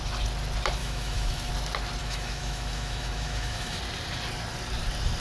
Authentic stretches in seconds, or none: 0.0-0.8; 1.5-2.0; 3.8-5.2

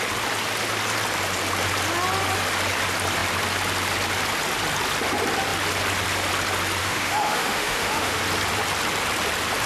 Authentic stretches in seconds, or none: 0.0-6.8; 8.2-9.7

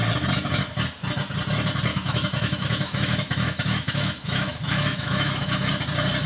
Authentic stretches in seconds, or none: 0.0-1.9; 5.7-6.3

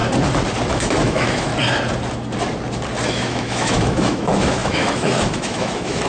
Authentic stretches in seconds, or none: 0.0-0.7; 1.5-3.1

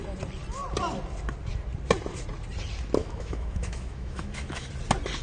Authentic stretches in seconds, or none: 0.0-3.0; 4.7-5.2

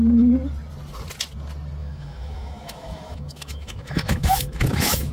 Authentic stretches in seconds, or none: 0.0-1.8

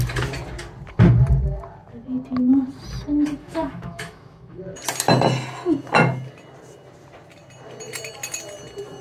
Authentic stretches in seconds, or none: 0.0-3.4; 4.6-9.0